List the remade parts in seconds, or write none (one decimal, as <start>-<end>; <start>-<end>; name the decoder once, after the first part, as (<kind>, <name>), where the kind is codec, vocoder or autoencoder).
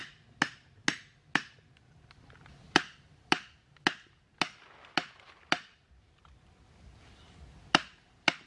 none